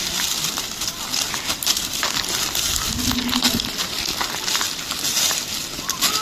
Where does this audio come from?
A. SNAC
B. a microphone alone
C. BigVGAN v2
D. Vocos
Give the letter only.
B